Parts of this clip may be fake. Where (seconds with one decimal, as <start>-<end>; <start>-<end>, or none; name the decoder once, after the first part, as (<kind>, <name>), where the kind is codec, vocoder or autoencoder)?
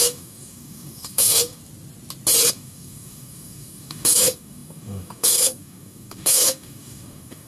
0.0-1.6 (codec, DAC); 2.5-7.5